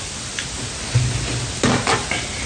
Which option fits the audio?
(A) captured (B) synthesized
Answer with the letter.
A